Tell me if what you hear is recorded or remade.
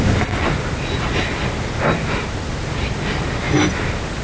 recorded